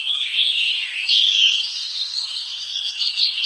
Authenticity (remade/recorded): remade